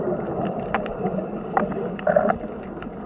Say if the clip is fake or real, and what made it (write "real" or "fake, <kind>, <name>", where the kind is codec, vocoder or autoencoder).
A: real